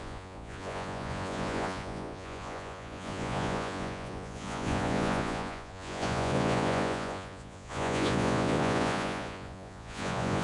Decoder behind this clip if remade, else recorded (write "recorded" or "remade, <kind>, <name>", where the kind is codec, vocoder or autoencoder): remade, vocoder, Vocos